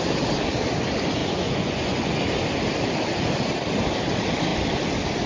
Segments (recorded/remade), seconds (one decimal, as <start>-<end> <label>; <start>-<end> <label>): 0.0-1.2 recorded; 1.2-2.1 remade; 2.1-5.3 recorded